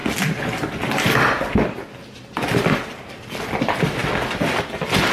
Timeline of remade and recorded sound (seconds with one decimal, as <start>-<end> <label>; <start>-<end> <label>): 0.0-5.1 recorded